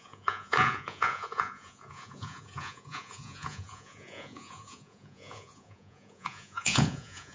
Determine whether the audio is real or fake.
fake